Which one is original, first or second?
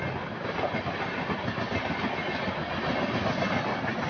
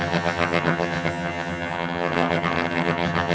first